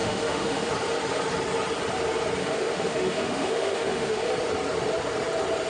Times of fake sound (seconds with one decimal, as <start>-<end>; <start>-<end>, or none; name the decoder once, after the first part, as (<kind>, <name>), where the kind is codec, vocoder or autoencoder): 0.0-0.7 (autoencoder, DAC-VAE); 2.4-4.3

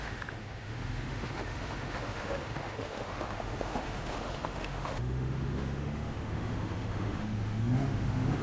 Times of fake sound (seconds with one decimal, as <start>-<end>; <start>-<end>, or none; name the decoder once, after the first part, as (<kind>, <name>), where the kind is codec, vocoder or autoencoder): 0.0-8.4 (autoencoder, DAC-VAE)

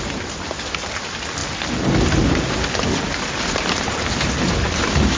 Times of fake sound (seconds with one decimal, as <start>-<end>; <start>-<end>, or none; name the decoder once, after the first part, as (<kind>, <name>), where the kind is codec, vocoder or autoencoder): none

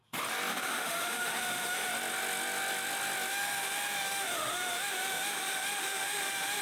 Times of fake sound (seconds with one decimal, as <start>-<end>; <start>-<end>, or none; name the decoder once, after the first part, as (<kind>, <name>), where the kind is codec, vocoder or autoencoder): 0.5-1.9 (autoencoder, DAC-VAE); 3.3-6.6

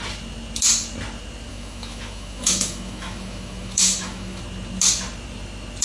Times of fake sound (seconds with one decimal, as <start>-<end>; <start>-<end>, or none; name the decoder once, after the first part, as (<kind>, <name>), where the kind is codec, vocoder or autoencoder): 1.5-4.4 (autoencoder, DAC-VAE)

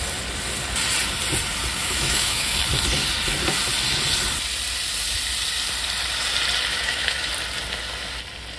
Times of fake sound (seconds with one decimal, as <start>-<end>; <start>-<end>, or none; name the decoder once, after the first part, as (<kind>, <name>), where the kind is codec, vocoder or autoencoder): 1.8-2.6 (autoencoder, DAC-VAE); 6.7-7.3